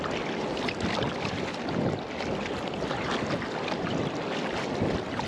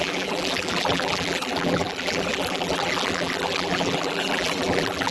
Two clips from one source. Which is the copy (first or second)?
second